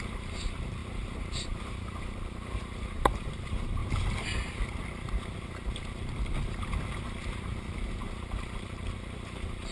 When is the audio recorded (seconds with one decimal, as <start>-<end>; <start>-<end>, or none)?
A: 3.8-8.0